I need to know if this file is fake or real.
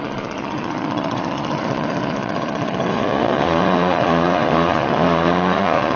fake